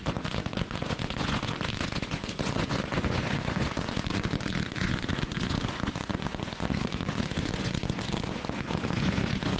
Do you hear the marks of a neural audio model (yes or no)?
yes